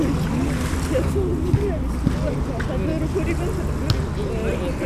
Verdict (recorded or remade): recorded